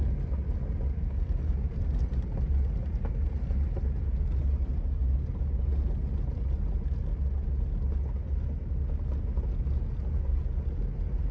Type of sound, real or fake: real